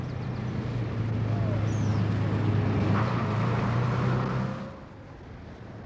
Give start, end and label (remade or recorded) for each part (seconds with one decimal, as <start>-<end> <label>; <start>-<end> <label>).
0.0-5.9 recorded

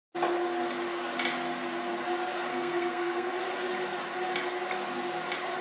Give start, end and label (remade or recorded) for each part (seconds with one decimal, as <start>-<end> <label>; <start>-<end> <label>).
0.0-2.5 recorded; 2.5-3.4 remade; 3.4-5.6 recorded